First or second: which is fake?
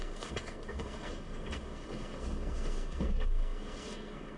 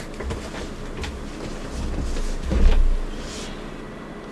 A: first